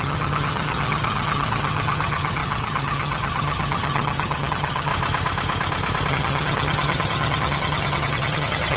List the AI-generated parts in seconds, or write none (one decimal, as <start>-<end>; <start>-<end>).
0.0-4.9; 6.1-8.8